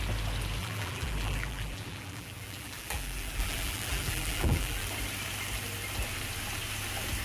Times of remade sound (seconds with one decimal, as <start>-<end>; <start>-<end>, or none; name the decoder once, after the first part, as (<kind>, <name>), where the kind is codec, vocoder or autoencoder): 0.6-4.9 (vocoder, BigVGAN v2)